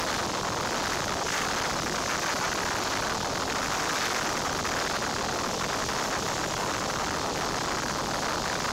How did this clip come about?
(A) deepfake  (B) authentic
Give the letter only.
B